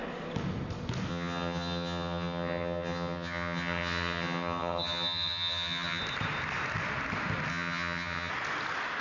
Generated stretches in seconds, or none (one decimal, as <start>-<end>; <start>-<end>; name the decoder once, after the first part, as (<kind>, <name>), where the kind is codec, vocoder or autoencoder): 1.1-6.0 (vocoder, HiFi-GAN); 7.5-8.3